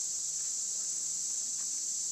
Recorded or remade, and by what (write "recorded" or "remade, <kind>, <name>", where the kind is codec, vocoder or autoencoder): remade, vocoder, BigVGAN v2